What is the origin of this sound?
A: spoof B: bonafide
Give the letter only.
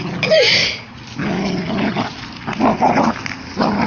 B